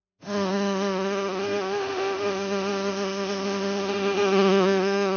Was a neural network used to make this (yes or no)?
yes